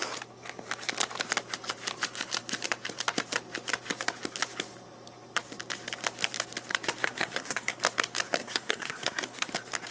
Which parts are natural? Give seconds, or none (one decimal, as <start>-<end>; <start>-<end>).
0.0-7.0; 7.8-8.4; 9.5-9.9